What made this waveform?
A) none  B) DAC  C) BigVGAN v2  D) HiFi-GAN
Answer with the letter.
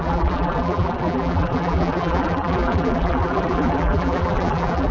C